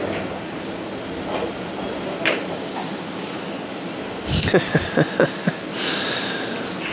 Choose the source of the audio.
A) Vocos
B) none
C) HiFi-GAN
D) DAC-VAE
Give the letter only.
B